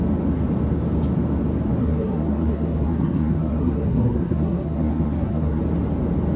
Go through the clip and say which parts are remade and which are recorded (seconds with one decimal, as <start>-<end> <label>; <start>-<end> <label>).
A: 0.0-1.8 recorded; 1.8-5.6 remade; 5.6-6.4 recorded

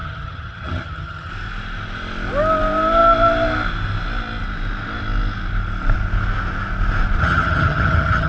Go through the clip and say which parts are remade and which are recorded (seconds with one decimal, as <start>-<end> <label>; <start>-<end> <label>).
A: 0.0-1.3 remade; 1.3-7.2 recorded; 7.2-8.3 remade

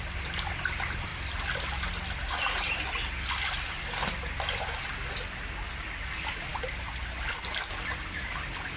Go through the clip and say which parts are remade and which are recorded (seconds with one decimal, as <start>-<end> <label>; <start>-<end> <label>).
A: 0.0-8.8 recorded

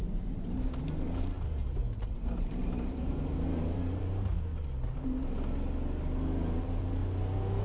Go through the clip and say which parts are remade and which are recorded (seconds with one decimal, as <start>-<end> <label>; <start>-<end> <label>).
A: 0.0-1.8 remade; 1.8-2.3 recorded; 2.3-4.5 remade; 4.5-6.6 recorded; 6.6-7.0 remade; 7.0-7.6 recorded

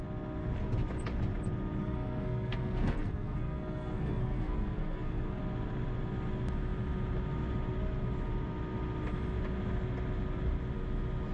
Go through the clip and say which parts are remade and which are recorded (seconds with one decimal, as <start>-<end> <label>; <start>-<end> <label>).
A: 0.0-1.8 recorded; 1.8-5.4 remade; 5.4-11.3 recorded